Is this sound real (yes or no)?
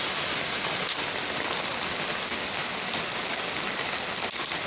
yes